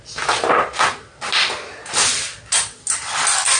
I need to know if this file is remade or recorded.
recorded